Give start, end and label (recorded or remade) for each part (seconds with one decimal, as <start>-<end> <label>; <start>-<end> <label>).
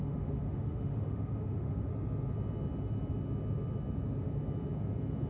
0.0-1.9 remade; 1.9-5.3 recorded